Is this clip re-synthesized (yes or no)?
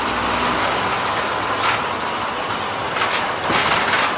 no